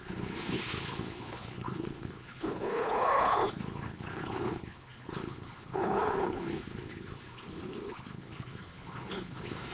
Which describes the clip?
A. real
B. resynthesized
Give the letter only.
B